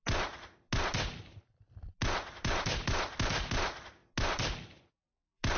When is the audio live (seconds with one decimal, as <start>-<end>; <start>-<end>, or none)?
0.0-5.6